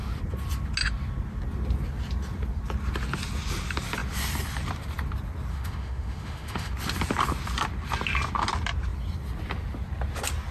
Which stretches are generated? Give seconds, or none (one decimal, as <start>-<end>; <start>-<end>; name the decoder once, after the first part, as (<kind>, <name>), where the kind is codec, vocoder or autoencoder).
5.5-6.7 (autoencoder, DAC-VAE)